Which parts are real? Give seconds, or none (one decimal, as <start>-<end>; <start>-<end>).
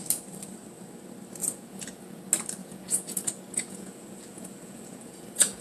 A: 0.0-1.4; 2.2-2.6